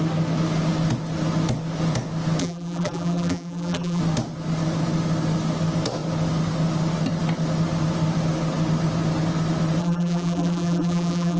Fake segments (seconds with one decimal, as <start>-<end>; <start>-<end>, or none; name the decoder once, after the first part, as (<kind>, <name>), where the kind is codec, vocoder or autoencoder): 2.4-4.0 (vocoder, BigVGAN v2); 9.8-11.4